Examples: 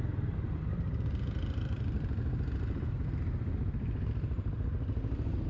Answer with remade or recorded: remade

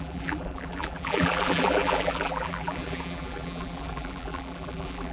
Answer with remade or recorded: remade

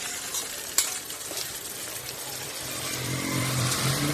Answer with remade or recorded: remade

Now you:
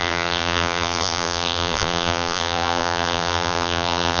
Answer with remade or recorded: remade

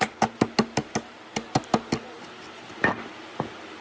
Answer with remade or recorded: recorded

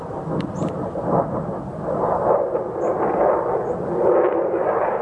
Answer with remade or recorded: recorded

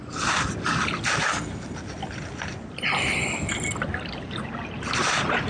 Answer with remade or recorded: recorded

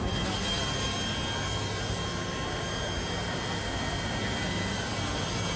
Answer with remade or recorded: recorded